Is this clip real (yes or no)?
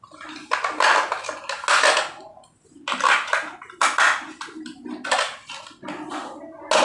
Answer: yes